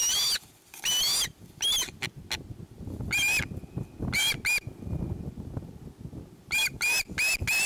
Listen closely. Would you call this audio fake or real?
real